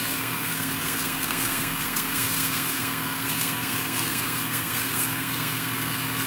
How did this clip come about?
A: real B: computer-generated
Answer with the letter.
B